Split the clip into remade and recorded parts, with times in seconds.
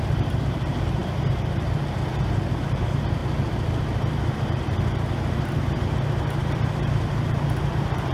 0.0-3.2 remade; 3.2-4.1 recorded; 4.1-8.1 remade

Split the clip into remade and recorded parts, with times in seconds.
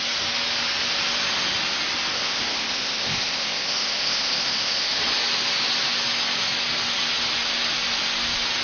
0.0-2.2 recorded; 2.2-5.0 remade; 5.0-8.6 recorded